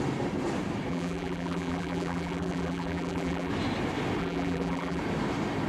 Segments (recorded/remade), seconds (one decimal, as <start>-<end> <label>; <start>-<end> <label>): 0.0-0.9 recorded; 0.9-3.5 remade; 3.5-4.2 recorded; 4.2-5.0 remade; 5.0-5.7 recorded